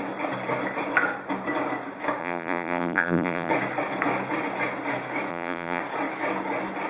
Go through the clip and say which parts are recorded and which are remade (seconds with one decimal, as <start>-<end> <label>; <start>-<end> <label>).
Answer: 0.0-2.2 recorded; 2.2-3.5 remade; 3.5-5.3 recorded; 5.3-5.8 remade; 5.8-6.9 recorded